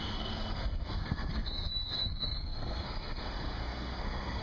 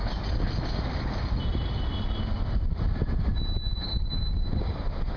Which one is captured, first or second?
second